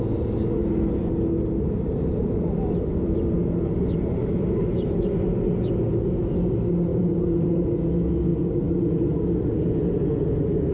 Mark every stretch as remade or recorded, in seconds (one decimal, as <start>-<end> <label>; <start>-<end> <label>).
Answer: 0.0-0.6 recorded; 0.6-5.5 remade; 5.5-6.9 recorded; 6.9-7.9 remade; 7.9-10.7 recorded